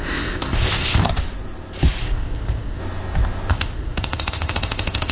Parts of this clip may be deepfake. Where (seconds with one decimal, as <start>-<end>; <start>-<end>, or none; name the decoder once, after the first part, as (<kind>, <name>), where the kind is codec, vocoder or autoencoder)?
0.0-1.1 (codec, ZipCodec); 2.0-2.8; 3.5-5.1